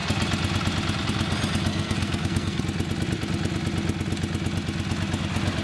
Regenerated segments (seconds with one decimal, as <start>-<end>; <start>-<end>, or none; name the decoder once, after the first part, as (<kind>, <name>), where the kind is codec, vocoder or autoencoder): 1.7-2.6 (codec, SNAC)